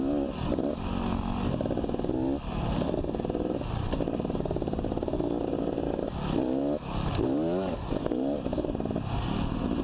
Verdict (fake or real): real